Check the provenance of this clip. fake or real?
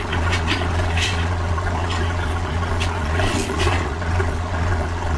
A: fake